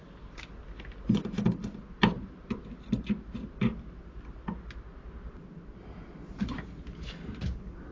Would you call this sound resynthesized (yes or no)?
no